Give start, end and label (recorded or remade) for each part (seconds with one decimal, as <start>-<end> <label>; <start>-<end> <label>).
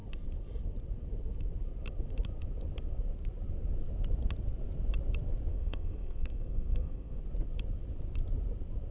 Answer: 0.0-5.5 recorded; 5.5-7.2 remade; 7.2-8.9 recorded